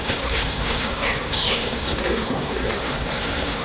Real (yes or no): no